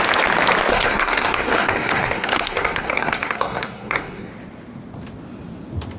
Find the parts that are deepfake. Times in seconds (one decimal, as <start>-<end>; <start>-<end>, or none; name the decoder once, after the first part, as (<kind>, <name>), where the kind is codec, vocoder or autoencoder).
0.7-4.3 (codec, SNAC)

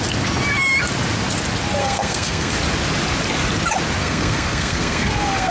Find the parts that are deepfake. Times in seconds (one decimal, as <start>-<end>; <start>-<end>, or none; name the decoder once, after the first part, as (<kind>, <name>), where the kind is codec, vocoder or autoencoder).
1.8-2.5 (codec, SNAC); 4.0-5.5

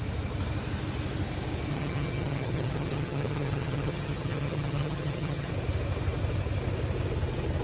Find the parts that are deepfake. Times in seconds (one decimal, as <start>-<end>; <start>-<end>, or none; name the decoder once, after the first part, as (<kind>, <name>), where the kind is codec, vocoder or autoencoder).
1.7-5.5 (vocoder, HiFi-GAN)

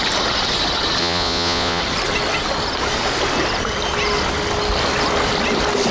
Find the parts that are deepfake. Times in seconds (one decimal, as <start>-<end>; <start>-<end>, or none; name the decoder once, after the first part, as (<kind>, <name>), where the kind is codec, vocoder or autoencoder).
1.0-1.8 (vocoder, Vocos)